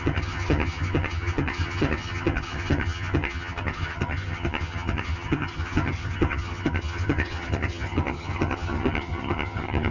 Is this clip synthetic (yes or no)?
yes